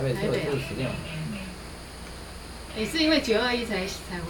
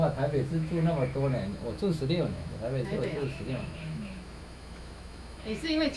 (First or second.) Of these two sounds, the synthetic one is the second